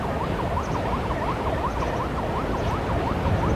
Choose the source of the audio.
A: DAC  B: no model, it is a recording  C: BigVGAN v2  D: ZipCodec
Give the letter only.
B